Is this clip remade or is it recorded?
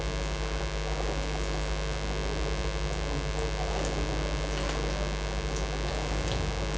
recorded